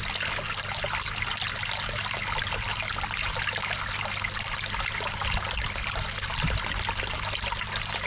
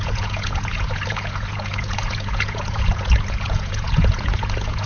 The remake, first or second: second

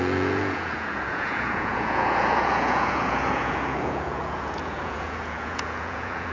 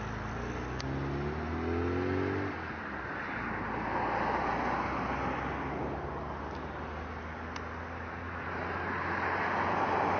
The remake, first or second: first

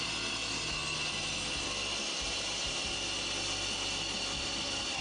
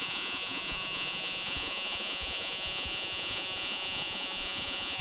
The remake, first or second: second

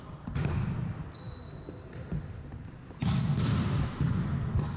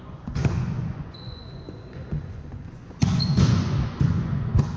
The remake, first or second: second